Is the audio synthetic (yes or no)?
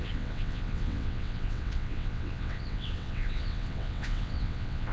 yes